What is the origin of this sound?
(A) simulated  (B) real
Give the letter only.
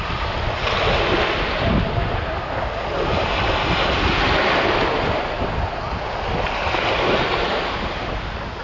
B